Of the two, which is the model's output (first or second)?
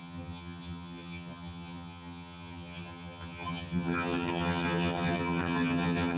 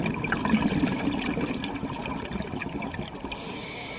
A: first